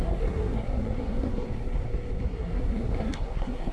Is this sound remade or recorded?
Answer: remade